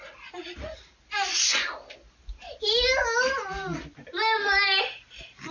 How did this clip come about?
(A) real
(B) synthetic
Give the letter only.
A